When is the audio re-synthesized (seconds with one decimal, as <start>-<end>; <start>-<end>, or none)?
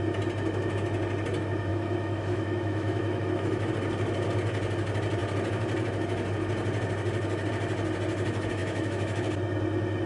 1.7-3.7; 8.6-9.3